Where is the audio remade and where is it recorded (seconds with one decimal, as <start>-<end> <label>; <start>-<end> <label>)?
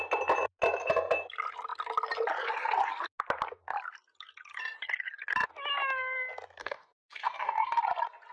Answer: 0.0-6.6 recorded; 6.6-7.8 remade; 7.8-8.3 recorded